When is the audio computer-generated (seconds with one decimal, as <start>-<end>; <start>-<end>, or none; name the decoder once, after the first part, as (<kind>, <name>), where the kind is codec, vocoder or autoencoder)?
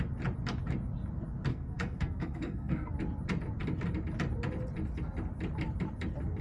1.5-2.9 (codec, SNAC)